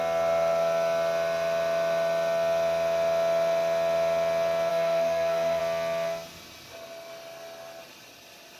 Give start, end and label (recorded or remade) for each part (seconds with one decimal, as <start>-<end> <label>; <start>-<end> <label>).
0.0-4.7 recorded; 4.7-5.6 remade; 5.6-8.6 recorded